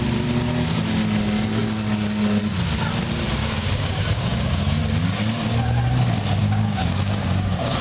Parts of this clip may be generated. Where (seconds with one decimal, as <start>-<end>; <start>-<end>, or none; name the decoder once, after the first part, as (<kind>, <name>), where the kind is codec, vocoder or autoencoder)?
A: 3.4-4.8 (codec, DAC); 6.4-7.8